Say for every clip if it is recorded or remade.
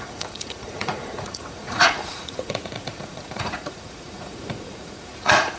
remade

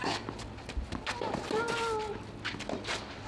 recorded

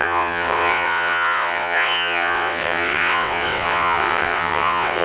remade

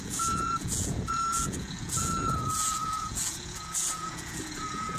remade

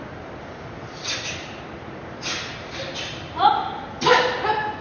remade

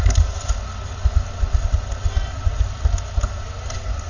recorded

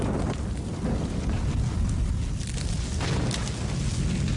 recorded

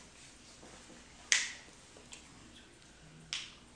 recorded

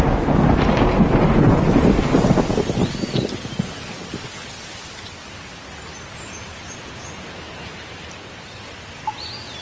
recorded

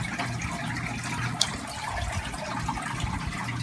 recorded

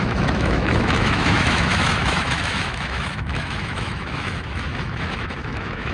remade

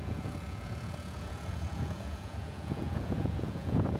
remade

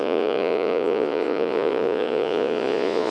remade